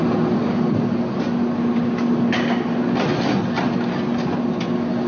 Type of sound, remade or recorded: recorded